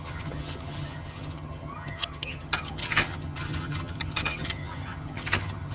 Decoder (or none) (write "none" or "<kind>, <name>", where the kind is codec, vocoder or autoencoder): vocoder, HiFi-GAN